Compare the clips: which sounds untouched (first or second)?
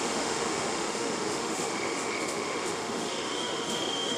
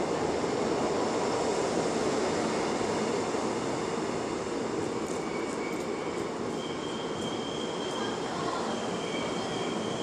second